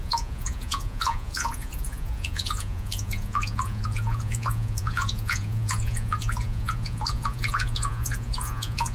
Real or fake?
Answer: fake